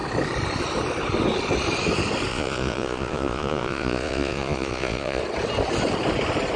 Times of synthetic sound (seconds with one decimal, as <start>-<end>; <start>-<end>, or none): 2.3-5.2